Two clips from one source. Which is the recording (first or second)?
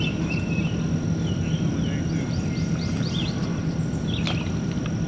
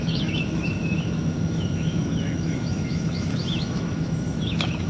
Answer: first